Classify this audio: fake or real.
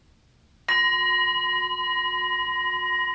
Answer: real